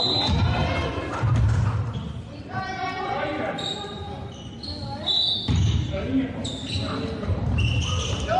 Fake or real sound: real